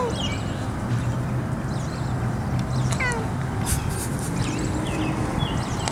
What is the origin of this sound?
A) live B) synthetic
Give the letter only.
A